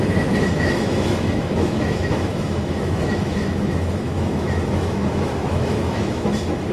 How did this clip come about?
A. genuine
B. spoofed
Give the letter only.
B